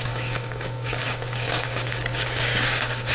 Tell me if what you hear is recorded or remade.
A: remade